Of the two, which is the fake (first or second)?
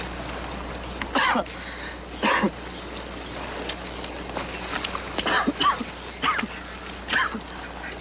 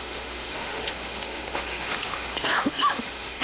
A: second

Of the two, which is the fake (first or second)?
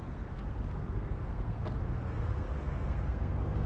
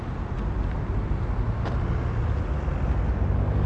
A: first